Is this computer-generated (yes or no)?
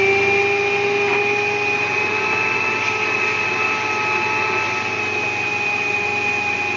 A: no